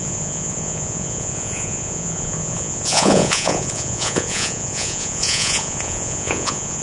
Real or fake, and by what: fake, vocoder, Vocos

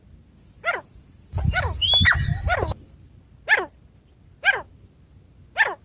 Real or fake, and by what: real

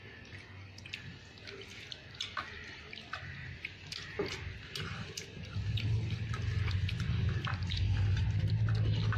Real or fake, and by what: real